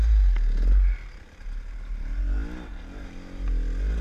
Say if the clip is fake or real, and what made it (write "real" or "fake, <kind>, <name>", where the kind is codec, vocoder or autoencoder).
real